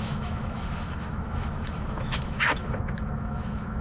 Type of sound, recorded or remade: remade